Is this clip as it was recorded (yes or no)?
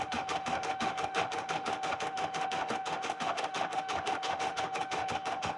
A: no